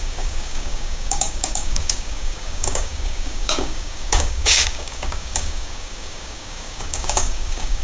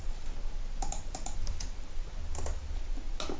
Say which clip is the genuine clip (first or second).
second